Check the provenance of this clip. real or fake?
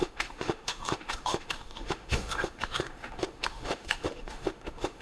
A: fake